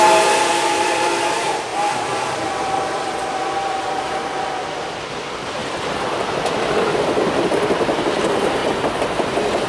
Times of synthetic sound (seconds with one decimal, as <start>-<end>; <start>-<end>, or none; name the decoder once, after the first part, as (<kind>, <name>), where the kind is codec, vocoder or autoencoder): 0.0-8.6 (vocoder, BigVGAN v2)